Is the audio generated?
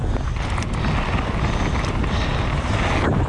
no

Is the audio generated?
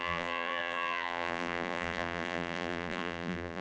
yes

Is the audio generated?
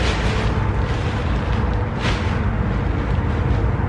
no